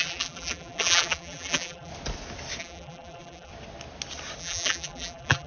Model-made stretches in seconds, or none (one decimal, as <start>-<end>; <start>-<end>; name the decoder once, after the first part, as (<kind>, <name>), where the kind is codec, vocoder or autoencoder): 0.0-1.9 (vocoder, BigVGAN v2); 2.6-3.5; 4.4-5.5